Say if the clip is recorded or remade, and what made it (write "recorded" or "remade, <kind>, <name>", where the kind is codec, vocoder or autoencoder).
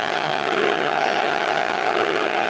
remade, vocoder, HiFi-GAN